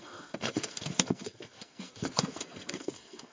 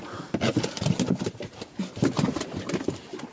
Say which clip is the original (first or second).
second